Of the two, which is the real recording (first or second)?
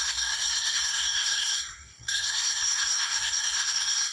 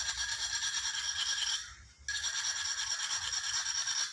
second